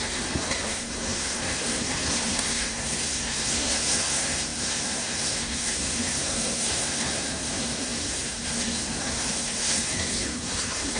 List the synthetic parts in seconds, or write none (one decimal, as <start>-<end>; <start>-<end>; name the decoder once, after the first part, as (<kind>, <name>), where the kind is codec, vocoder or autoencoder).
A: 0.0-11.0 (codec, SNAC)

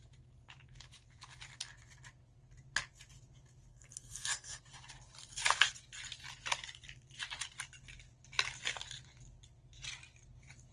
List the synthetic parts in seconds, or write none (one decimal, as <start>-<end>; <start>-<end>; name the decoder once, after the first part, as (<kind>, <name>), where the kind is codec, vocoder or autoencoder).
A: 3.7-4.6 (codec, SNAC)

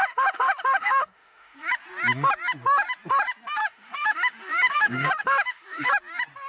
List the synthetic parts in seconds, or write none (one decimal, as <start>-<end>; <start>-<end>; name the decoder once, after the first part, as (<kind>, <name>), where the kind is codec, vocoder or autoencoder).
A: 0.0-1.7 (autoencoder, DAC-VAE); 3.6-5.9

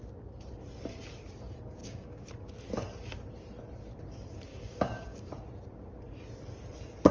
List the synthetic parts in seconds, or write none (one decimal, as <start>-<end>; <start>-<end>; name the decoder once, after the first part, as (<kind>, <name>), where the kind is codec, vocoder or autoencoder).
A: 1.8-2.3 (codec, DAC); 4.5-5.3

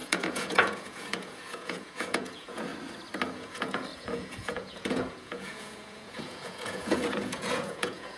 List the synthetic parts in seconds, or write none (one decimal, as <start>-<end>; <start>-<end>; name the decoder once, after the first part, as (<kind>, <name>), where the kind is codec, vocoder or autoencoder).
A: 0.0-2.7 (vocoder, Vocos); 3.3-8.2

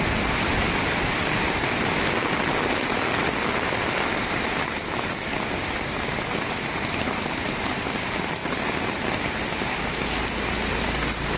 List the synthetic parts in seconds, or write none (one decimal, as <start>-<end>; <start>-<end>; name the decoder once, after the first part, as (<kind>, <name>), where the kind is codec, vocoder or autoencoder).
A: none

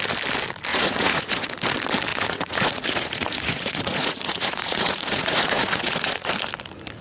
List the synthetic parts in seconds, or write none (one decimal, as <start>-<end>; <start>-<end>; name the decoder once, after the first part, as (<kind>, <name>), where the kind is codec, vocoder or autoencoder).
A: 0.7-1.5 (vocoder, Vocos); 2.1-6.3